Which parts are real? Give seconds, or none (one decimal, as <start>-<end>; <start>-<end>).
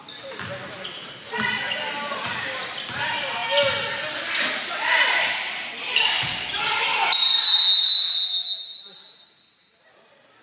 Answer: 0.0-10.4